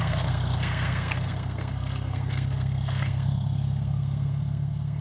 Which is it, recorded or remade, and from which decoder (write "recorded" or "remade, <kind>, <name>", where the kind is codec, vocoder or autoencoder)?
remade, codec, SNAC